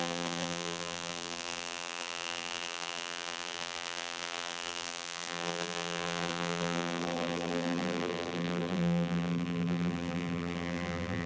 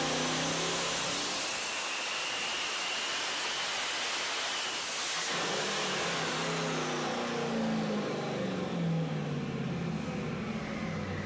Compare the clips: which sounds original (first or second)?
second